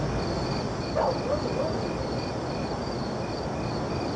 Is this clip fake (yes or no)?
no